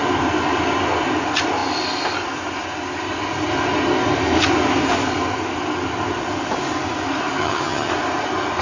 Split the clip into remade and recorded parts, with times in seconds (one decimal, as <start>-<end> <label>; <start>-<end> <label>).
0.0-7.4 recorded; 7.4-7.9 remade; 7.9-8.6 recorded